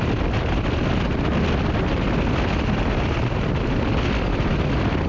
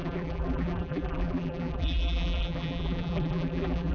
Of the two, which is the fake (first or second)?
second